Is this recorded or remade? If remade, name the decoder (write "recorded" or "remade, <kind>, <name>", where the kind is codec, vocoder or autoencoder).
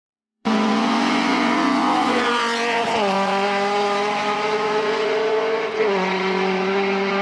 remade, vocoder, Vocos